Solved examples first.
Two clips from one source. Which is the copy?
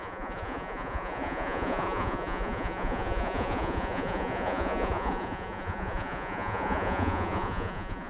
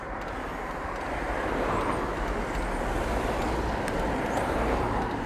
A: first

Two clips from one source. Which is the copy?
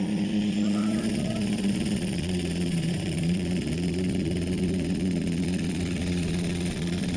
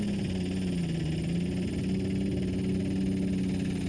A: first